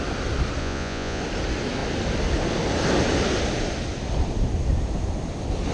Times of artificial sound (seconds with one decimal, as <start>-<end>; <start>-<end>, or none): 0.6-1.2